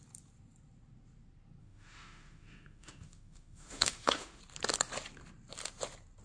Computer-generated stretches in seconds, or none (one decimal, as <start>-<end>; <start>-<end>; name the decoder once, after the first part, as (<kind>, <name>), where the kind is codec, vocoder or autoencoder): 1.6-4.4 (autoencoder, DAC-VAE)